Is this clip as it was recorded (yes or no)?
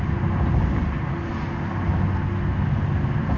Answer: yes